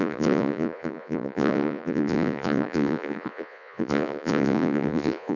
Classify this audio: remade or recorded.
remade